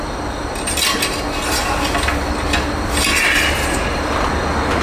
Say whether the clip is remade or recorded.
recorded